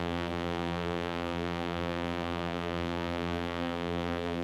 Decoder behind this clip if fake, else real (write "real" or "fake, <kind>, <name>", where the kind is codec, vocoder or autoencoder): fake, vocoder, BigVGAN v2